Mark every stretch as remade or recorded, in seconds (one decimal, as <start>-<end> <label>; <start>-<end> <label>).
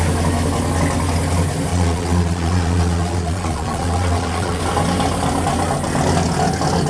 0.0-1.7 recorded; 1.7-4.6 remade; 4.6-6.9 recorded